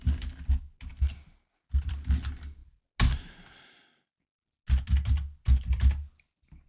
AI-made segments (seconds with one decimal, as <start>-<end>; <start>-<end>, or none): none

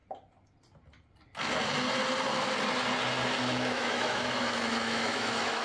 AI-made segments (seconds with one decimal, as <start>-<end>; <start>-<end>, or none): 3.4-5.6

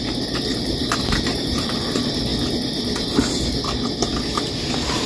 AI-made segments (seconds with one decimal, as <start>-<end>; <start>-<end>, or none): 0.5-1.9

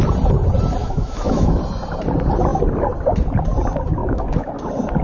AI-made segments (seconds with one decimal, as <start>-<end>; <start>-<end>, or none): 0.8-1.5; 4.0-4.5

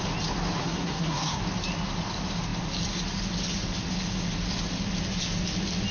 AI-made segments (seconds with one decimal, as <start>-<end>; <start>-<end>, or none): 0.6-1.4